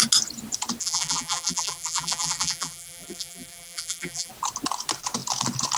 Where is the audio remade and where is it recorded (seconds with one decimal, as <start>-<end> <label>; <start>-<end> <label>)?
0.0-0.8 recorded; 0.8-4.3 remade; 4.3-5.8 recorded